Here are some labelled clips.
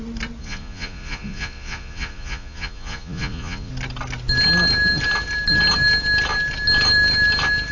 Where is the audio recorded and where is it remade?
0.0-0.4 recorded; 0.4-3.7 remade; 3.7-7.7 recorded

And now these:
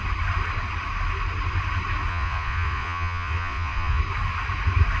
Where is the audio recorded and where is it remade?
0.0-2.1 recorded; 2.1-4.0 remade; 4.0-5.0 recorded

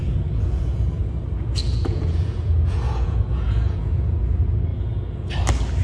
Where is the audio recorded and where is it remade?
0.0-1.0 remade; 1.0-1.6 recorded; 1.6-4.2 remade; 4.2-4.7 recorded; 4.7-5.3 remade; 5.3-5.8 recorded